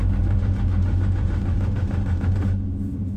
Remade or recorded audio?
remade